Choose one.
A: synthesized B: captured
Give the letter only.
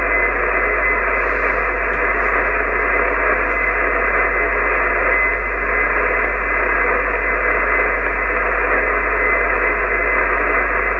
B